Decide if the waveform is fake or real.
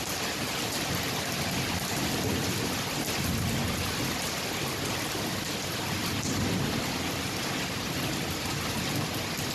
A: real